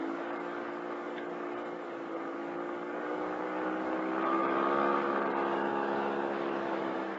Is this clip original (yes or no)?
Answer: no